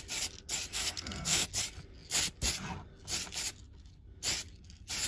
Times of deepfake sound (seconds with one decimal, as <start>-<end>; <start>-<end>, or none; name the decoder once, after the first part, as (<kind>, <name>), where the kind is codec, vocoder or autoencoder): 0.7-1.5 (codec, SNAC)